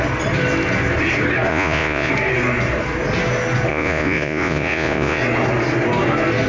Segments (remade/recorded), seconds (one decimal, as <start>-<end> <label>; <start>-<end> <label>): 0.0-1.5 recorded; 1.5-2.1 remade; 2.1-3.7 recorded; 3.7-5.2 remade; 5.2-6.5 recorded

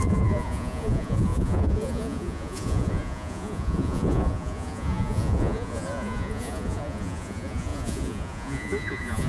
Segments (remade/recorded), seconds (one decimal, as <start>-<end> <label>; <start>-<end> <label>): 0.0-9.3 remade

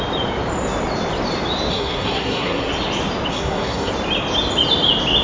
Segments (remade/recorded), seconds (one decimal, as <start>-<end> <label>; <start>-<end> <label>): 0.0-1.7 recorded; 1.7-2.7 remade; 2.7-3.3 recorded; 3.3-3.9 remade; 3.9-5.2 recorded